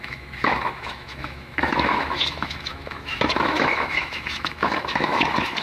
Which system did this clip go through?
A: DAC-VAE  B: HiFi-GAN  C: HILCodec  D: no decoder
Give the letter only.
A